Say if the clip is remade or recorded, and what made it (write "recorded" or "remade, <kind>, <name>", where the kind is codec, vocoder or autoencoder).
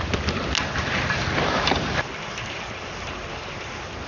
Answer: recorded